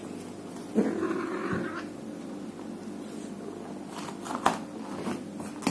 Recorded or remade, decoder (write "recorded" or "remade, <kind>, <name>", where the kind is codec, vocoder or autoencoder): recorded